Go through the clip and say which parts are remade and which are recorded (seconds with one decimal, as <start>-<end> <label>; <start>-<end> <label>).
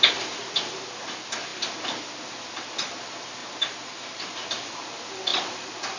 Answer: 0.0-3.4 recorded; 3.4-4.2 remade; 4.2-6.0 recorded